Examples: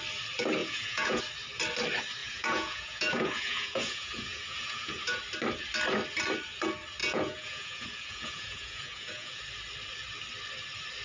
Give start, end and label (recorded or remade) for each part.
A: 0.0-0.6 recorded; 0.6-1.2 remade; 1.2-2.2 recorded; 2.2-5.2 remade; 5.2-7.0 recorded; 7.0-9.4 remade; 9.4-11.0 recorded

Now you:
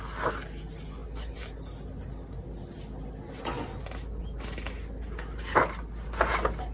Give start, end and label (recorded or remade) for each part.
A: 0.0-6.7 recorded

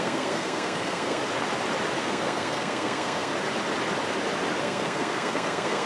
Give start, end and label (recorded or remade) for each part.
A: 0.0-1.2 remade; 1.2-2.0 recorded; 2.0-3.3 remade; 3.3-4.6 recorded; 4.6-5.9 remade

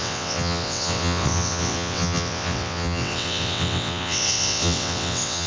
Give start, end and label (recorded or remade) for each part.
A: 0.0-5.5 remade

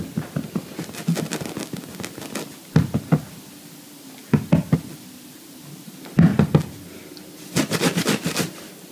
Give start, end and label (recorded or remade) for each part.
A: 0.0-8.9 recorded

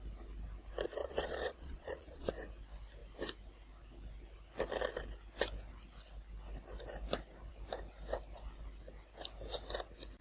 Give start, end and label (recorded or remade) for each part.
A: 0.0-1.0 recorded; 1.0-2.3 remade; 2.3-10.2 recorded

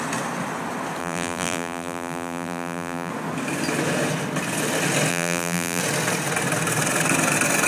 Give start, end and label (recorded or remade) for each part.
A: 0.0-1.0 recorded; 1.0-3.1 remade; 3.1-5.1 recorded; 5.1-5.8 remade; 5.8-7.7 recorded